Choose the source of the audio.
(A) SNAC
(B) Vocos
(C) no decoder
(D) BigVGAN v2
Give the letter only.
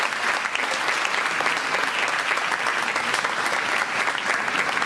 C